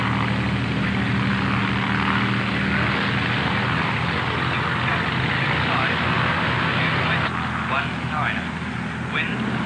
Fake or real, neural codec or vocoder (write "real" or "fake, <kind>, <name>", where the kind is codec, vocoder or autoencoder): real